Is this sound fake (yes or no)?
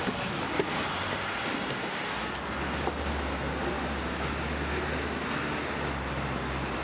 no